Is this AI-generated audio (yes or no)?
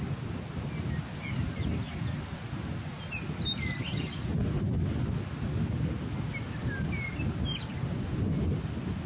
no